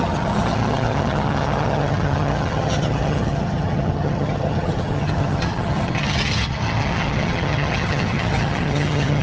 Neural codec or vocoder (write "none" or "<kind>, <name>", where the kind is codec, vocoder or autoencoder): vocoder, HiFi-GAN